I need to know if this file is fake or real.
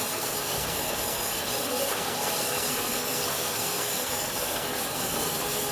fake